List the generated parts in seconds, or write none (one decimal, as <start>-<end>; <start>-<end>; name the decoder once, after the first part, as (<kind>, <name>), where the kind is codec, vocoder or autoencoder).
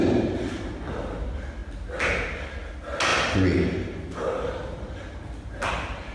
none